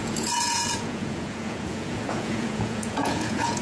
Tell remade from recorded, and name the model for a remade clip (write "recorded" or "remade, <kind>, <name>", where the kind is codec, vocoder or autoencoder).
remade, vocoder, Vocos